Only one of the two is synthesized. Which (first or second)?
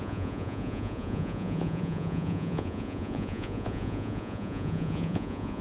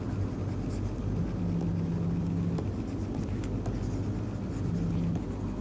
first